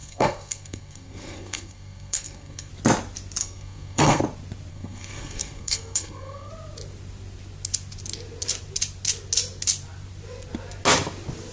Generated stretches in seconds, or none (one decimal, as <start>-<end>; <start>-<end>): 0.0-2.7; 3.4-4.2; 4.7-6.5